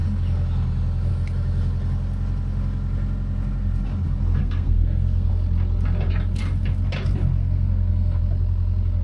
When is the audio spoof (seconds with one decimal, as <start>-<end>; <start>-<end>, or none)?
4.4-5.3; 7.4-8.2